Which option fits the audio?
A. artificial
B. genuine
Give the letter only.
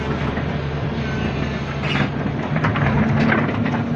B